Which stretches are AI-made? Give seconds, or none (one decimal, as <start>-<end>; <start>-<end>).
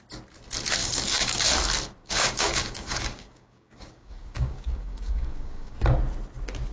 0.8-1.5; 2.0-5.8